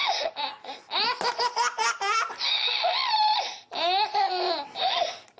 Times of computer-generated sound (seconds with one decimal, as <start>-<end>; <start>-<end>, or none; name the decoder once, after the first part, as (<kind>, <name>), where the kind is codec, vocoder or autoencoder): none